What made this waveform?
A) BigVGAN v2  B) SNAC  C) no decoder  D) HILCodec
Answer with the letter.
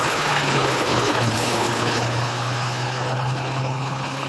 D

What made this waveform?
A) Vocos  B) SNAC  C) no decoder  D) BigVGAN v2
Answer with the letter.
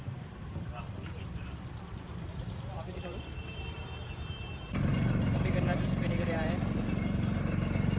D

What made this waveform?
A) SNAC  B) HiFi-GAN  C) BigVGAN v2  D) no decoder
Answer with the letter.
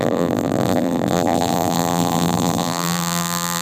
C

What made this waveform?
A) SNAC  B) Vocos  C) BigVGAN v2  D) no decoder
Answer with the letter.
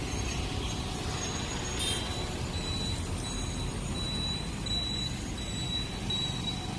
D